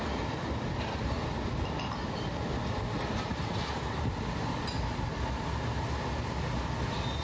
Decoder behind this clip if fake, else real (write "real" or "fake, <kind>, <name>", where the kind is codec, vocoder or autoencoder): real